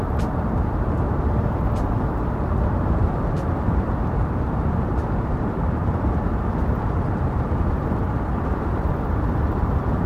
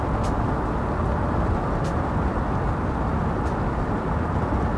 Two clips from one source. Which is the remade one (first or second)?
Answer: first